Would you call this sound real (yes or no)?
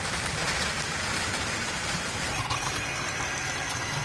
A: no